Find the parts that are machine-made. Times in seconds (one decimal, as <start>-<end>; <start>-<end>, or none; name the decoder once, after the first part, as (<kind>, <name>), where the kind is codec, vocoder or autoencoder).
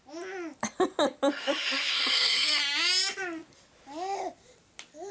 1.3-2.6 (codec, SNAC)